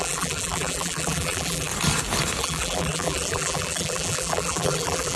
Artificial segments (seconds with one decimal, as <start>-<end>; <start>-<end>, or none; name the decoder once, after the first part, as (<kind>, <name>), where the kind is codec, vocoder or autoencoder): 0.0-1.7 (vocoder, BigVGAN v2); 2.4-5.2

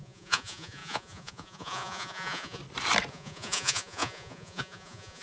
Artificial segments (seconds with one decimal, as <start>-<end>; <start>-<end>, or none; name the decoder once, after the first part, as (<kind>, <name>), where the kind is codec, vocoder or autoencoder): 0.0-2.6 (vocoder, Vocos); 3.1-5.2

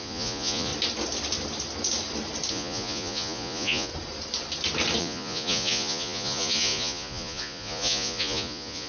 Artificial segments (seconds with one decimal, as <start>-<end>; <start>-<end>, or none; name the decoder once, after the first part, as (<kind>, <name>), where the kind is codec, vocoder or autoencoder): 0.0-0.7 (vocoder, Vocos); 2.5-3.9; 5.0-8.9

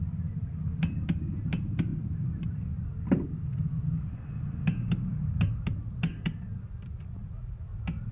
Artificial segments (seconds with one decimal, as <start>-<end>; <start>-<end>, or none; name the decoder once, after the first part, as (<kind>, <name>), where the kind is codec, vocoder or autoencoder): none

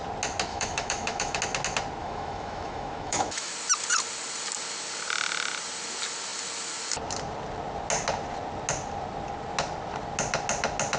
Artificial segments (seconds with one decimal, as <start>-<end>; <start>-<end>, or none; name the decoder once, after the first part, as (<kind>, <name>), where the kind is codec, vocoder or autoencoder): 0.5-1.4 (autoencoder, DAC-VAE); 2.0-3.5

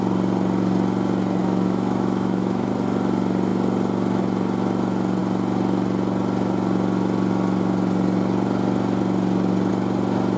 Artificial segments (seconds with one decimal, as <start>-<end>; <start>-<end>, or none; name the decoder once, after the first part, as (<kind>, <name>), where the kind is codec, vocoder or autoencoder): 1.4-2.7 (autoencoder, DAC-VAE)

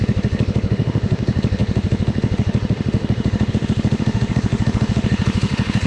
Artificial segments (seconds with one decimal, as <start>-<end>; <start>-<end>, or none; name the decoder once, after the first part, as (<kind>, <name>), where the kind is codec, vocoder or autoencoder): 0.0-5.9 (autoencoder, DAC-VAE)

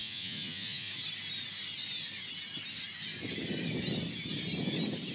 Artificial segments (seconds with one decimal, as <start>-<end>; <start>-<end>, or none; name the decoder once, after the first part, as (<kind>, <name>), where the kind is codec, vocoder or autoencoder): 0.0-0.9 (vocoder, Vocos)